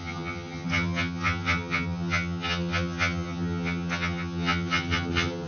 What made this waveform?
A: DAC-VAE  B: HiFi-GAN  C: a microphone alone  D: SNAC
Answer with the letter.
B